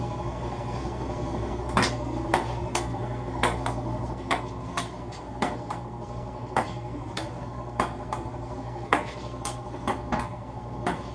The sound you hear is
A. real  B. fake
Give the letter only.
B